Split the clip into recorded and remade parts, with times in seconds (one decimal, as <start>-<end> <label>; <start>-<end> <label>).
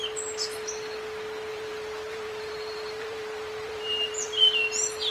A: 0.0-1.5 recorded; 1.5-4.6 remade; 4.6-5.1 recorded